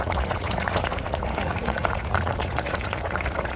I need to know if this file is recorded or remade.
remade